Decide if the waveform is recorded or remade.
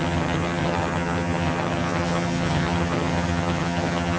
remade